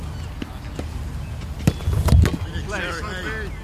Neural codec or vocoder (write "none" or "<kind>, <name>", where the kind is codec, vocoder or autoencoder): none